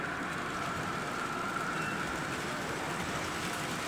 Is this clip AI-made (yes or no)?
yes